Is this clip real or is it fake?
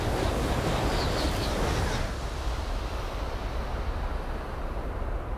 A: real